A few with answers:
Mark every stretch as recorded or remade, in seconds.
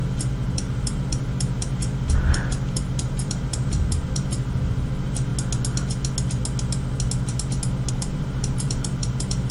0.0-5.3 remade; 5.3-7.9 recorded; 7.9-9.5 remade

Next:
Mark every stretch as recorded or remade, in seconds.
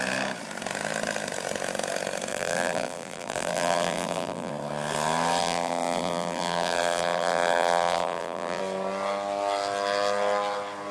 0.0-2.3 recorded; 2.3-4.5 remade; 4.5-5.4 recorded; 5.4-8.6 remade; 8.6-10.9 recorded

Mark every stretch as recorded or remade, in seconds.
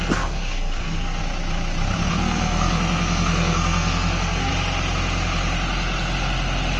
0.0-1.2 remade; 1.2-2.1 recorded; 2.1-4.5 remade; 4.5-6.8 recorded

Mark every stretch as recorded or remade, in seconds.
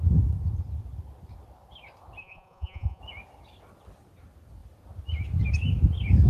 0.0-2.2 recorded; 2.2-3.0 remade; 3.0-6.3 recorded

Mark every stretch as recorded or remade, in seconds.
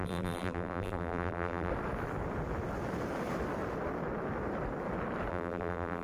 0.0-1.7 remade; 1.7-5.3 recorded; 5.3-6.0 remade